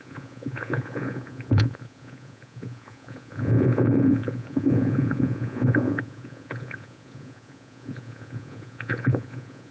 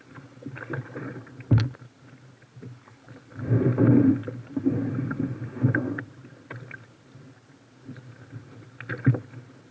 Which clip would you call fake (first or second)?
first